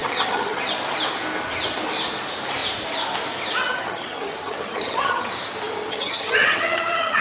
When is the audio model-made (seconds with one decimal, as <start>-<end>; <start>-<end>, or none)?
0.0-0.6; 3.7-5.3; 5.9-7.2